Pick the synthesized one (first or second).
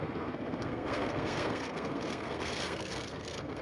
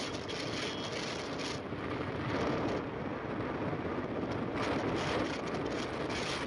first